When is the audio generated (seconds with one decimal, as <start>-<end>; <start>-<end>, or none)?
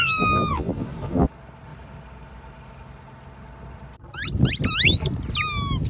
none